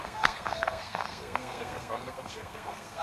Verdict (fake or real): fake